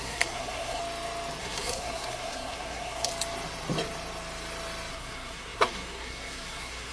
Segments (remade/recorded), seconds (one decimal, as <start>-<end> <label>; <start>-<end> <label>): 0.0-0.8 remade; 0.8-1.4 recorded; 1.4-3.1 remade; 3.1-4.9 recorded; 4.9-6.9 remade